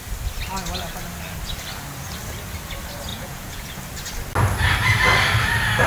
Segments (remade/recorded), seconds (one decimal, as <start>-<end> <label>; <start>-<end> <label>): 0.0-3.1 recorded; 3.1-3.8 remade; 3.8-5.9 recorded